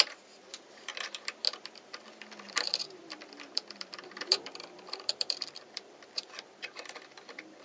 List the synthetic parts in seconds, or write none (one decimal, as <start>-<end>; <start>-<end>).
0.0-0.9; 1.9-7.6